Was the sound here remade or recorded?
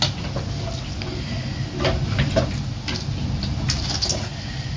recorded